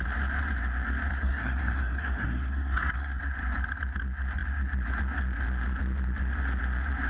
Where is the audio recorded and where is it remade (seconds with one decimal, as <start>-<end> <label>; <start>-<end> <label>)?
0.0-1.1 recorded; 1.1-3.2 remade; 3.2-7.1 recorded